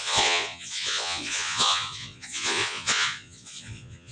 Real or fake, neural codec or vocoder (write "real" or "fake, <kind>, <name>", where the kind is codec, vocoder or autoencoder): fake, vocoder, Vocos